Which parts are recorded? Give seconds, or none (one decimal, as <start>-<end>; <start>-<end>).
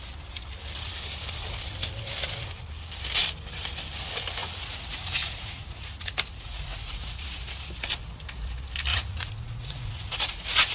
0.0-4.4; 7.4-8.9